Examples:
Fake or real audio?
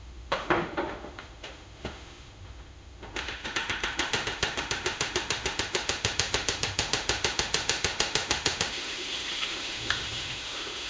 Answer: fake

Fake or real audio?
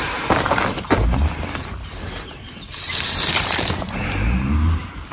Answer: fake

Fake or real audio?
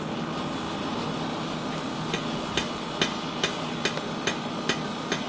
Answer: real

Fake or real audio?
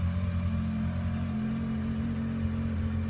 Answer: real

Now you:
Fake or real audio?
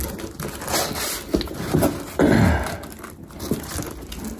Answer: real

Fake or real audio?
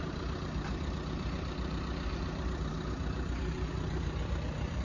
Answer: fake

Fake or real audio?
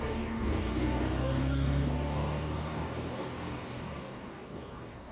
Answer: fake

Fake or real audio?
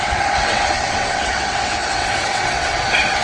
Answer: fake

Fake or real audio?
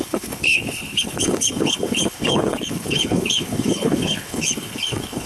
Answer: fake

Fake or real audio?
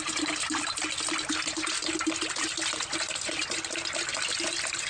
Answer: real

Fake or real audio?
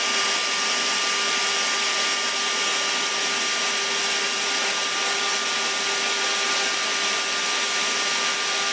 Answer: real